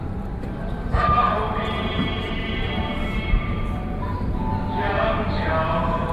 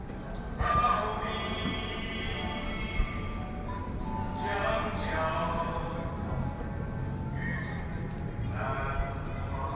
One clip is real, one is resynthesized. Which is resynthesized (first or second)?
first